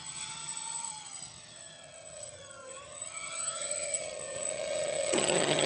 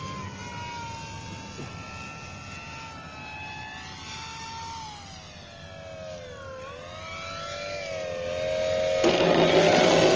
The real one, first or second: second